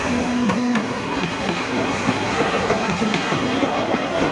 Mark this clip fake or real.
fake